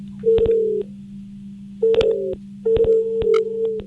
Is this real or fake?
real